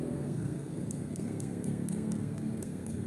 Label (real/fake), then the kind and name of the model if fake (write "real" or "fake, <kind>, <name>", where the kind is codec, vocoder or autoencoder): fake, codec, SNAC